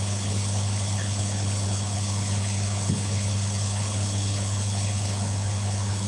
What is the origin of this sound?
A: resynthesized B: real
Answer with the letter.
A